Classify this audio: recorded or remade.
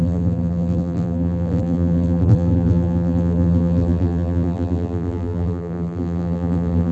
remade